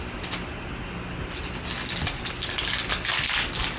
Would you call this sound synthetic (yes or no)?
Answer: no